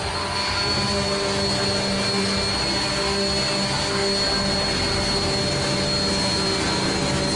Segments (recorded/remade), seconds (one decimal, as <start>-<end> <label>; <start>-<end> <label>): 0.0-7.4 recorded

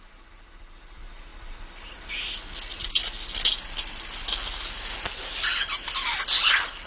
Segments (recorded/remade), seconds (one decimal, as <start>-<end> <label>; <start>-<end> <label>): 0.0-6.9 recorded